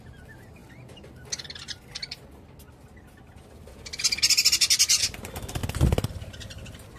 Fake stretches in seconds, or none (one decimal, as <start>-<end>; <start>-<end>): none